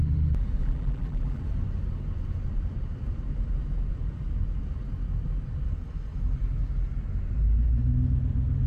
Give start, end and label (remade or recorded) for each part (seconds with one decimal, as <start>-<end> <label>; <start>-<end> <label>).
0.0-0.6 recorded; 0.6-1.4 remade; 1.4-8.7 recorded